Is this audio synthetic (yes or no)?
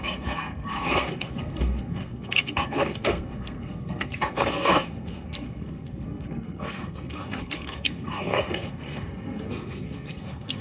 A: yes